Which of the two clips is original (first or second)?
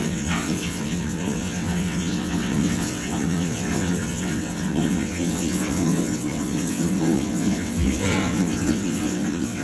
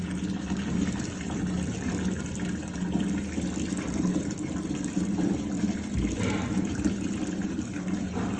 second